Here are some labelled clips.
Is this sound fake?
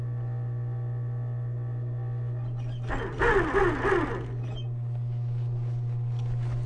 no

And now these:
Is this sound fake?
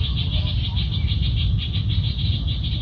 no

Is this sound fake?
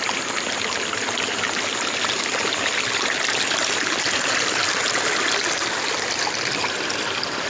no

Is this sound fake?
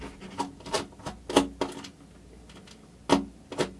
no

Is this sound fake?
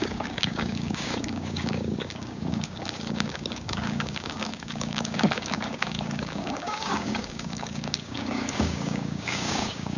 yes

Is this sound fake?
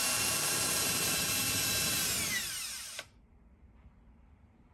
yes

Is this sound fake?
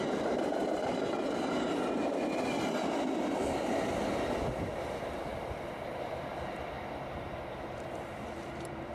yes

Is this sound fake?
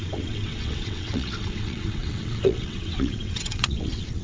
yes